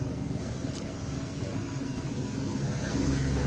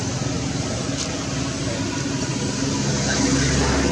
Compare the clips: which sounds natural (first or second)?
second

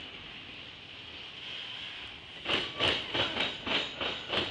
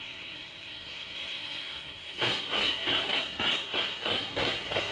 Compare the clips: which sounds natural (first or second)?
first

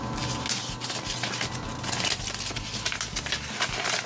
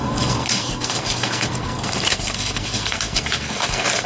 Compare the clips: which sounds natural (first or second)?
first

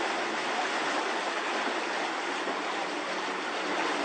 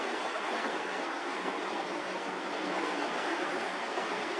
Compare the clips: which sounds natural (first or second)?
first